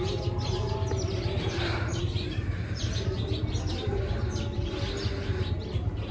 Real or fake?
real